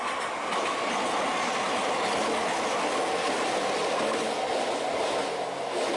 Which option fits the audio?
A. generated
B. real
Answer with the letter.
B